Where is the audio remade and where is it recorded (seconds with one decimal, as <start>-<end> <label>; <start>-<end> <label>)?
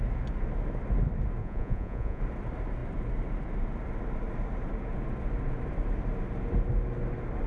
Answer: 0.0-1.4 recorded; 1.4-2.2 remade; 2.2-7.5 recorded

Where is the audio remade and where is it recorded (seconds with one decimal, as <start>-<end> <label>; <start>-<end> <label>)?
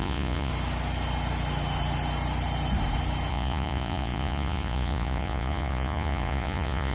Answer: 0.0-0.5 remade; 0.5-3.3 recorded; 3.3-6.9 remade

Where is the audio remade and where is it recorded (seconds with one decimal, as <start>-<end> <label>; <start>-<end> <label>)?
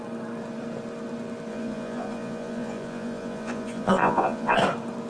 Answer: 0.0-1.5 recorded; 1.5-4.6 remade; 4.6-5.1 recorded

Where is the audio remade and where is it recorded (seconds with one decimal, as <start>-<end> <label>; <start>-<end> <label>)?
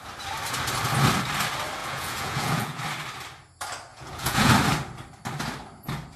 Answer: 0.0-1.8 recorded; 1.8-2.8 remade; 2.8-3.9 recorded; 3.9-4.5 remade; 4.5-6.2 recorded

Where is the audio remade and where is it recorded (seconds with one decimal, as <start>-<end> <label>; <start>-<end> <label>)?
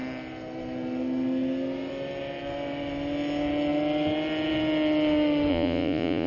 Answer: 0.0-5.5 recorded; 5.5-6.3 remade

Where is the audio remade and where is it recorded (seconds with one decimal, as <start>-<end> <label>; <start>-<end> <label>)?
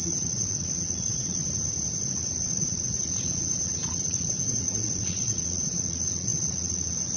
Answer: 0.0-1.4 remade; 1.4-2.0 recorded; 2.0-7.2 remade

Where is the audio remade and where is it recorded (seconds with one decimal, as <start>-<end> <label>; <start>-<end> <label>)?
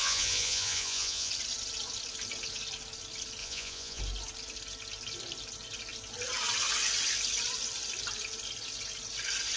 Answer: 0.0-1.3 remade; 1.3-3.4 recorded; 3.4-4.0 remade; 4.0-9.6 recorded